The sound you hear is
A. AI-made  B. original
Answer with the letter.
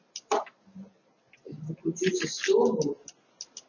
B